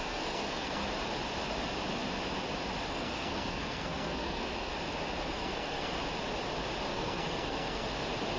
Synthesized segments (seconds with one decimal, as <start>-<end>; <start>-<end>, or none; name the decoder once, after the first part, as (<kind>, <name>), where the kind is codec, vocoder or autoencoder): 0.0-0.8 (codec, SNAC); 2.9-4.7; 5.3-6.0; 6.9-7.9